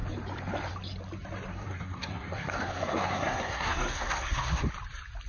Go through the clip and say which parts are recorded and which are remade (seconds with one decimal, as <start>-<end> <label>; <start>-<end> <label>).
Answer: 0.0-1.5 recorded; 1.5-4.7 remade; 4.7-5.3 recorded

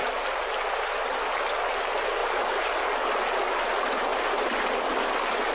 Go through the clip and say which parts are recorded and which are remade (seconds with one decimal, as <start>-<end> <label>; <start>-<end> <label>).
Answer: 0.0-2.2 recorded; 2.2-3.1 remade; 3.1-4.1 recorded; 4.1-5.5 remade

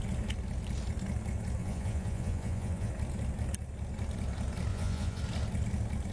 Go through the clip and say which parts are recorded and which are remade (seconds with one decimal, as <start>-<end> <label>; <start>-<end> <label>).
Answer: 0.0-1.6 recorded; 1.6-2.9 remade; 2.9-4.7 recorded; 4.7-5.2 remade; 5.2-6.1 recorded

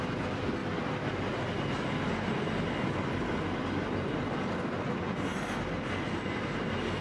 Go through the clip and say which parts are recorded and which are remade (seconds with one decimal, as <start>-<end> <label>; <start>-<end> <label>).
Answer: 0.0-7.0 recorded

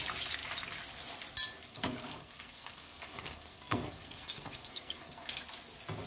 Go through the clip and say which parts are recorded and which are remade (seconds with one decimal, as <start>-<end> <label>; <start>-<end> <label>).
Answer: 0.0-1.7 recorded; 1.7-5.4 remade; 5.4-6.1 recorded